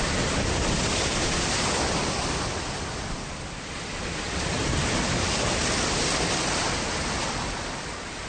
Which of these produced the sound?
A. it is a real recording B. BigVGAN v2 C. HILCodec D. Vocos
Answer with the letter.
A